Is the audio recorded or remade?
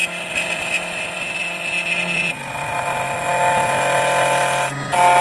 recorded